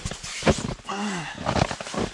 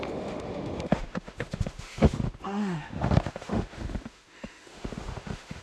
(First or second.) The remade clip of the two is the second